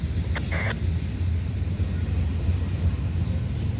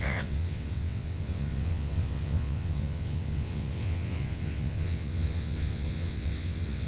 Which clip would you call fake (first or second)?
second